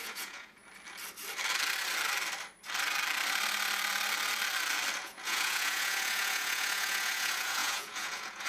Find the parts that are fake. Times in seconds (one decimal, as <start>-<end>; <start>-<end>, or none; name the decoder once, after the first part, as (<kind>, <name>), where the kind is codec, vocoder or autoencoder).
0.0-0.6 (vocoder, Vocos); 5.0-8.5